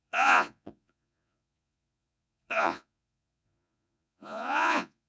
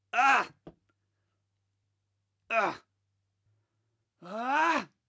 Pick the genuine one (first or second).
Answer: second